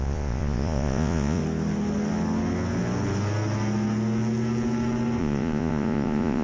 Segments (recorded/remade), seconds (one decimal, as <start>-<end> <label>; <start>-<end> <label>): 0.0-1.4 remade; 1.4-5.2 recorded; 5.2-6.4 remade